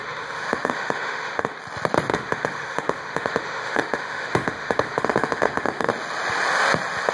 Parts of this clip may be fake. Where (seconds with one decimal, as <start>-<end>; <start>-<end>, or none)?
0.0-1.6; 2.1-5.9